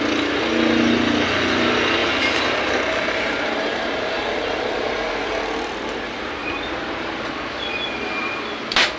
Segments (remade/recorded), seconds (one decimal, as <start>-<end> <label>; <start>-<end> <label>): 0.0-2.0 recorded; 2.0-5.1 remade; 5.1-6.4 recorded; 6.4-7.3 remade; 7.3-9.0 recorded